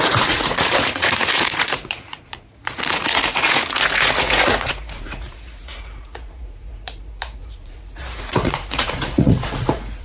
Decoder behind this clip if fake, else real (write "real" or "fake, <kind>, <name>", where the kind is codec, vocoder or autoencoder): fake, vocoder, Vocos